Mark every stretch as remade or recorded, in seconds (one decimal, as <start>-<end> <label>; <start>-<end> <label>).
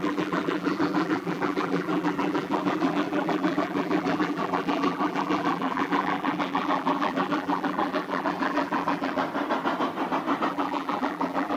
0.0-9.2 remade; 9.2-10.5 recorded; 10.5-11.6 remade